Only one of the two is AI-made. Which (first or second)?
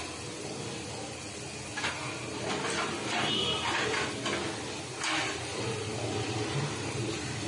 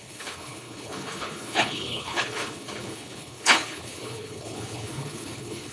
second